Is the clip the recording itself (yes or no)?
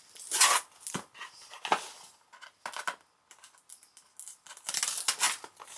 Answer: yes